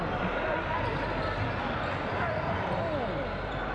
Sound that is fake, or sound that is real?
real